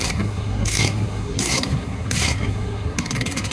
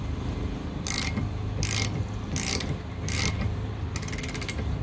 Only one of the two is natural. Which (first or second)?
second